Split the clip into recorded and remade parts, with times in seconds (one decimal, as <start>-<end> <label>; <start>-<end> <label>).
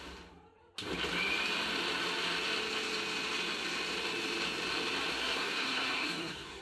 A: 0.0-5.1 recorded; 5.1-6.6 remade